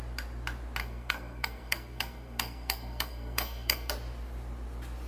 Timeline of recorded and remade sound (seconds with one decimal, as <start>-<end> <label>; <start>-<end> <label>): 0.0-0.8 recorded; 0.8-3.9 remade; 3.9-5.1 recorded

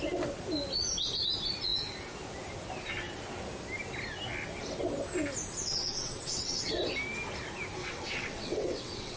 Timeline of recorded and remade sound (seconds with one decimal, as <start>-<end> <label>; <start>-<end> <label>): 0.0-5.6 recorded; 5.6-6.7 remade; 6.7-7.8 recorded; 7.8-9.2 remade